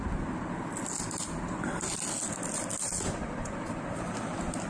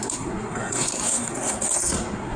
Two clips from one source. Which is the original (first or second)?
first